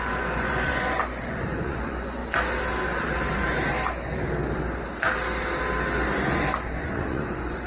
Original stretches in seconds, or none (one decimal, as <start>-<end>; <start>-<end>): 2.2-6.8